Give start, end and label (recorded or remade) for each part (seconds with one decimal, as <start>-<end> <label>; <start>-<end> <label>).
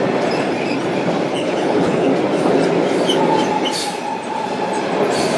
0.0-1.3 recorded; 1.3-2.1 remade; 2.1-5.4 recorded